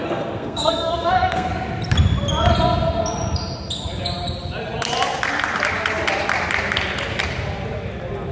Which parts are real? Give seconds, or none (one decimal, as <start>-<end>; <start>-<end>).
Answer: 1.5-8.3